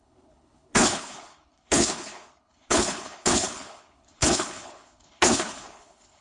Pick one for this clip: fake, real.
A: fake